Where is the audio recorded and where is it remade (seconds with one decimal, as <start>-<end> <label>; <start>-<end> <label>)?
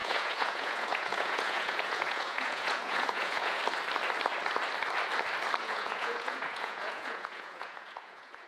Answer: 0.0-3.6 remade; 3.6-5.6 recorded; 5.6-8.5 remade